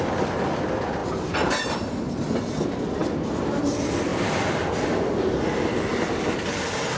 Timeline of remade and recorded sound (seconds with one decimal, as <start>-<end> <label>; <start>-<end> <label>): 0.0-7.0 recorded